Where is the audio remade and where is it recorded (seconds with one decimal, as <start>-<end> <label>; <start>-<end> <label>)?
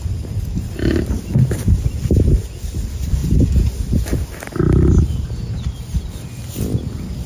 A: 0.0-3.2 remade; 3.2-4.6 recorded; 4.6-7.3 remade